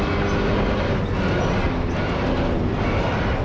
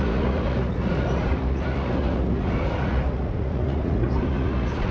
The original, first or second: first